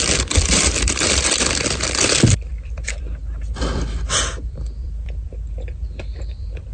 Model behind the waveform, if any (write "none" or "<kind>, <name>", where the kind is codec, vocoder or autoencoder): vocoder, BigVGAN v2